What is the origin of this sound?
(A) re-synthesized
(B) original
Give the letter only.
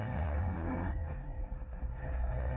A